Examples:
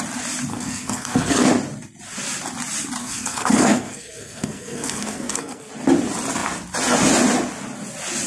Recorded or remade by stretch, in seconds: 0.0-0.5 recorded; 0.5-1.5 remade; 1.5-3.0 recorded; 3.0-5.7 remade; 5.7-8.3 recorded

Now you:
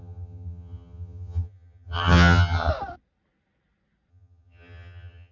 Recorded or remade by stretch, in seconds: 0.0-2.7 remade; 2.7-4.1 recorded; 4.1-5.3 remade

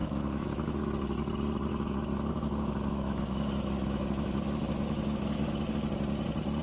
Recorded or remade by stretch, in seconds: 0.0-0.8 remade; 0.8-1.7 recorded; 1.7-5.7 remade; 5.7-6.6 recorded

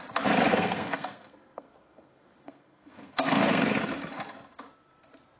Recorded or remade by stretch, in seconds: 0.0-0.5 recorded; 0.5-3.7 remade; 3.7-5.4 recorded

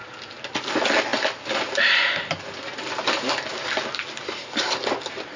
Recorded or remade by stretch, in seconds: 0.0-5.4 recorded

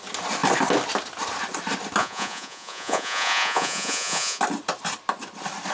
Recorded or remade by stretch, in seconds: 0.0-2.0 recorded; 2.0-4.4 remade; 4.4-5.7 recorded

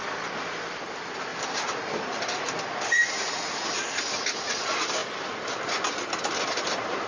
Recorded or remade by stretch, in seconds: 0.0-1.3 recorded; 1.3-1.8 remade; 1.8-5.0 recorded; 5.0-6.1 remade; 6.1-7.1 recorded